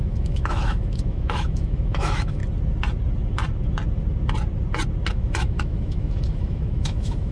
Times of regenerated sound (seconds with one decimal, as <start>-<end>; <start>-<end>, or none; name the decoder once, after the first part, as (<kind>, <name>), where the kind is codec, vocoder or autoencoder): 0.0-2.4 (autoencoder, DAC-VAE); 5.1-7.3